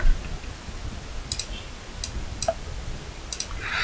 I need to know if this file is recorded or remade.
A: recorded